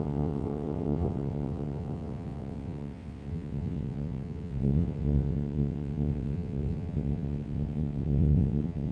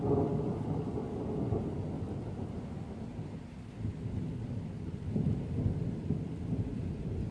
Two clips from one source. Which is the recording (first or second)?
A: second